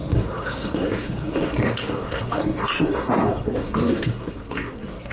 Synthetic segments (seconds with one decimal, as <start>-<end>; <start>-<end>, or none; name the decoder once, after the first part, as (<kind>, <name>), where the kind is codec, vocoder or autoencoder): 0.0-5.1 (codec, SNAC)